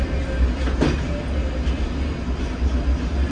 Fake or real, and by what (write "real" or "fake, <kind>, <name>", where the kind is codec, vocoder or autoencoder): real